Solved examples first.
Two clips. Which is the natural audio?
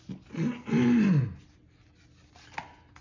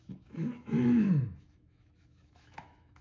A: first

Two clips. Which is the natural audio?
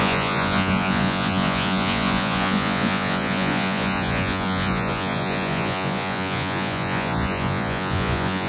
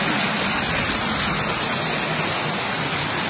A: second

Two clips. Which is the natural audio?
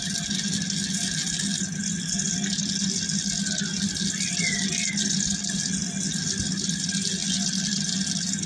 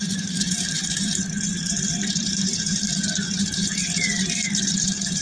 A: first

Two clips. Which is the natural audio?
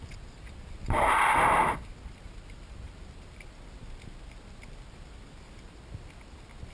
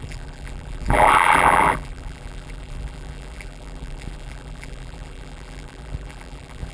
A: first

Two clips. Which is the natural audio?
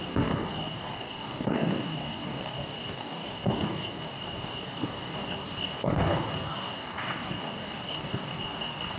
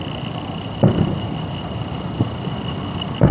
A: second